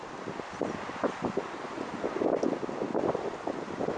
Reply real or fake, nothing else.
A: real